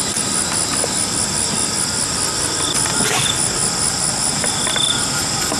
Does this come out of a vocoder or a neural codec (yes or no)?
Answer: no